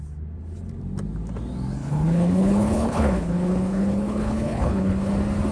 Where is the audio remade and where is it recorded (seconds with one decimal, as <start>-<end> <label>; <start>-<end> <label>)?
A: 0.0-1.8 recorded; 1.8-5.1 remade; 5.1-5.5 recorded